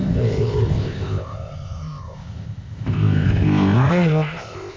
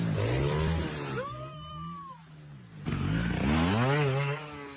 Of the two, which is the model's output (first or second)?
first